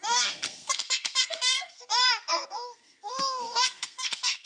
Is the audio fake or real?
fake